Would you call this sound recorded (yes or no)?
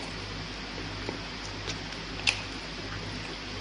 yes